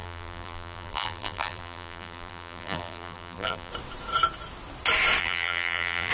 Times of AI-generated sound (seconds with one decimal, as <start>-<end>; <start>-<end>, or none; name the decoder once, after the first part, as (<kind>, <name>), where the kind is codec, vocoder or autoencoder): 0.0-3.7 (vocoder, BigVGAN v2); 5.2-6.1